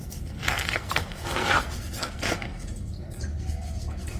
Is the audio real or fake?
fake